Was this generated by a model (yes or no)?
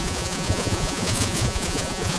yes